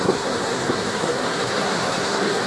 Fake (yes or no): yes